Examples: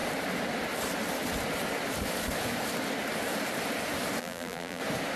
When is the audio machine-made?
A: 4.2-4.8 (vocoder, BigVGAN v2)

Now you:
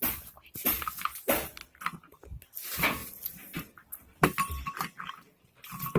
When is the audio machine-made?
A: none

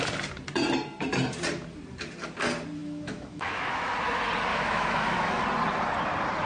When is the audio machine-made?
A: 2.8-3.9 (autoencoder, DAC-VAE); 4.5-5.4

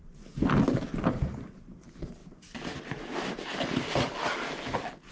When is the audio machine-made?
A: 2.2-4.5 (vocoder, BigVGAN v2)

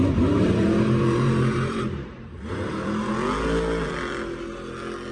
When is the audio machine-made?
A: 0.0-3.1 (vocoder, BigVGAN v2)